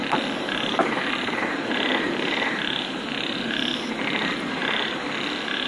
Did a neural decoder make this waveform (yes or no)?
no